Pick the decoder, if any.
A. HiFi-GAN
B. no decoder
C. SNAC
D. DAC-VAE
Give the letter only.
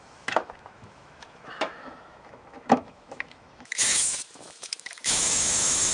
D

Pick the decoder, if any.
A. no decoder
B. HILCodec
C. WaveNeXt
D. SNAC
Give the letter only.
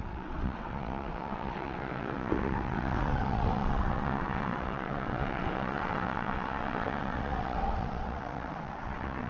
C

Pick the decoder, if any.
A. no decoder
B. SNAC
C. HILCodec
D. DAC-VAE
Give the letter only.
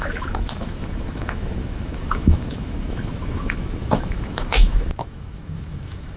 D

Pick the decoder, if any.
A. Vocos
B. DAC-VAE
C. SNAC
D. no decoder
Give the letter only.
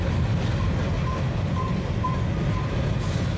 D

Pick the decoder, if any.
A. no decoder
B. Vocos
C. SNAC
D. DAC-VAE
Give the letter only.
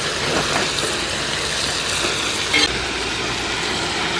A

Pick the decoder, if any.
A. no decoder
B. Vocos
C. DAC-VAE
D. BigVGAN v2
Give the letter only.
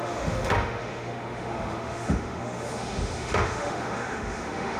C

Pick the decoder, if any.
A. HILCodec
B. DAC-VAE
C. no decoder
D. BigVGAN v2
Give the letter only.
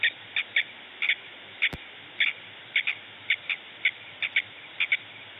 C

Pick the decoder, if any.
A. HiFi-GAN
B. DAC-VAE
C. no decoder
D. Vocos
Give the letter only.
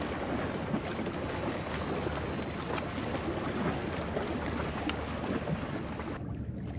C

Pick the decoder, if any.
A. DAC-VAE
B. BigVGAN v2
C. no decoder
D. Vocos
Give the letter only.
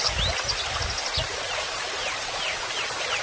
C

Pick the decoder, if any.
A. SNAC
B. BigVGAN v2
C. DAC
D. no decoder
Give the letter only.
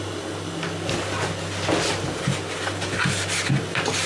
D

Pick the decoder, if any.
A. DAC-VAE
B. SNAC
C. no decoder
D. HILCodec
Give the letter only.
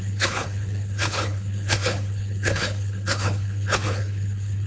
D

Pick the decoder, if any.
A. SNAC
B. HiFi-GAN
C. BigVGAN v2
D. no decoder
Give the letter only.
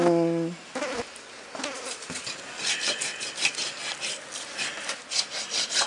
D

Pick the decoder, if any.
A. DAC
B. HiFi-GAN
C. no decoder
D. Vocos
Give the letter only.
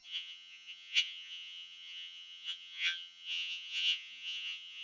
B